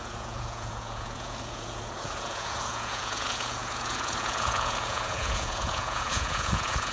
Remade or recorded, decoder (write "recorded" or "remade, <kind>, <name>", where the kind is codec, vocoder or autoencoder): remade, vocoder, Vocos